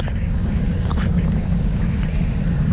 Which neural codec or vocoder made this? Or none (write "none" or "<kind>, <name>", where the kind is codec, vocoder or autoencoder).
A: codec, DAC